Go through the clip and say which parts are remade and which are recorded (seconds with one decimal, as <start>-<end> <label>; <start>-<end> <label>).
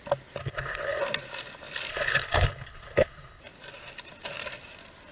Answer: 0.0-0.4 recorded; 0.4-1.0 remade; 1.0-1.9 recorded; 1.9-3.4 remade; 3.4-5.1 recorded